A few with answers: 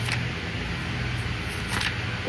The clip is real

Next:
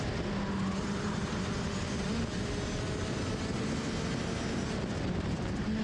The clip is real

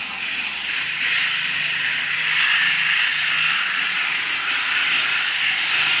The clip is real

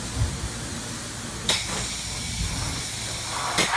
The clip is real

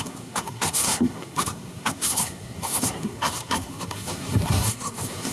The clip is fake